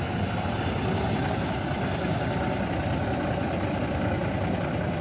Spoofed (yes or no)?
no